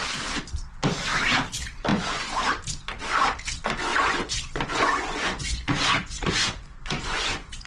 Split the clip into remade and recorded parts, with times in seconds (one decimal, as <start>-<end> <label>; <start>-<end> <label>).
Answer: 0.0-1.9 recorded; 1.9-2.5 remade; 2.5-3.9 recorded; 3.9-7.7 remade